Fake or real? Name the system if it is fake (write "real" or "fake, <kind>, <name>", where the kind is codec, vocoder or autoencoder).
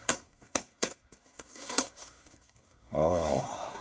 fake, codec, SNAC